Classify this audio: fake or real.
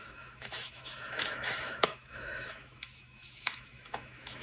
fake